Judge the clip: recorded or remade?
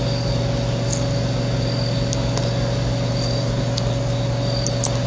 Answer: recorded